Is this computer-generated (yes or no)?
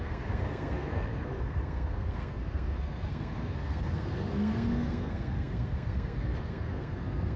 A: yes